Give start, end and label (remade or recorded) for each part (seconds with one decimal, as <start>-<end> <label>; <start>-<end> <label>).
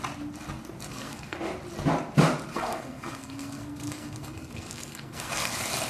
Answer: 0.0-0.9 recorded; 0.9-1.4 remade; 1.4-2.5 recorded; 2.5-5.5 remade; 5.5-5.9 recorded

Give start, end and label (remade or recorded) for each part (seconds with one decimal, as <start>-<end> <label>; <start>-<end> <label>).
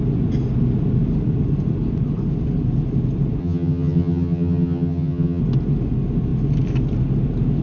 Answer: 0.0-3.4 recorded; 3.4-5.4 remade; 5.4-7.6 recorded